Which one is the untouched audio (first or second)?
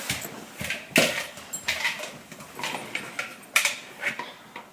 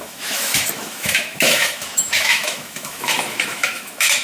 first